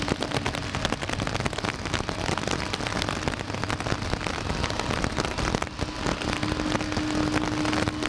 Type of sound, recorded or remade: recorded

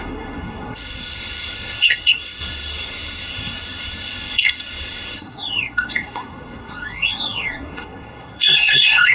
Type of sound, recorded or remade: remade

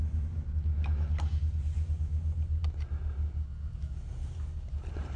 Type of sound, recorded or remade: recorded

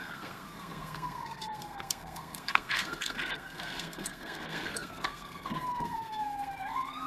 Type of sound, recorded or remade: remade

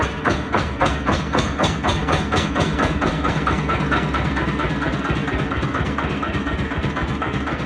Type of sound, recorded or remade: remade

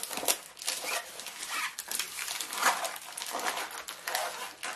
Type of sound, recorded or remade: recorded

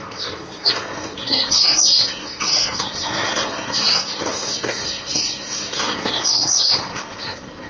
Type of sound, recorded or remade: remade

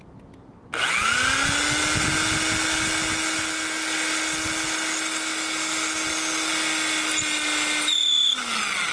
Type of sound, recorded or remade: recorded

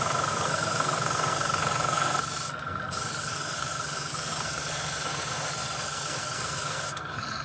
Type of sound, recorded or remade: remade